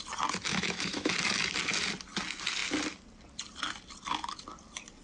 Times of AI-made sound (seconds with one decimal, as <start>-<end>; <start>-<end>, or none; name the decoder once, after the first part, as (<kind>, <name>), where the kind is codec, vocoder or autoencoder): 0.5-1.1 (autoencoder, DAC-VAE)